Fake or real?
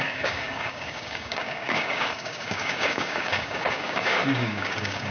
fake